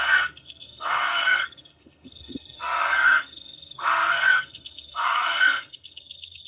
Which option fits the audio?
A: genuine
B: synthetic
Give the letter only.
B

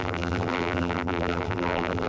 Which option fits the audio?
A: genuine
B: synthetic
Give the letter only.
B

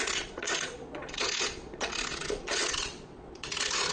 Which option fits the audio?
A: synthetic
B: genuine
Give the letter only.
A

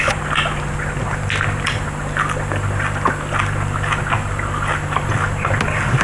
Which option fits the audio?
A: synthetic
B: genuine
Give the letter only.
B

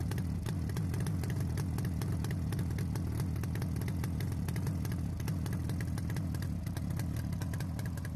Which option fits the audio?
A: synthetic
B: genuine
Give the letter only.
B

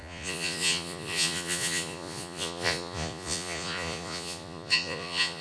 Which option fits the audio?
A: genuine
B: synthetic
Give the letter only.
B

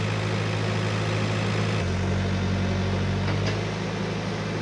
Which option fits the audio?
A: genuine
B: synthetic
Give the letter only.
A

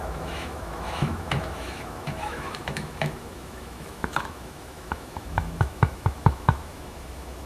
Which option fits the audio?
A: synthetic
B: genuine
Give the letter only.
A